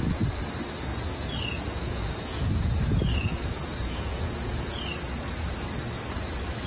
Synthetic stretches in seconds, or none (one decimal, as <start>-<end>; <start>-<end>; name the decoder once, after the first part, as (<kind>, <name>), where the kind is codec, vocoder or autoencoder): 0.9-4.9 (vocoder, Vocos)